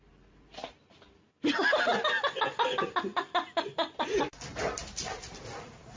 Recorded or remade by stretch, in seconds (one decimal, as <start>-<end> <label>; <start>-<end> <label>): 0.0-6.0 recorded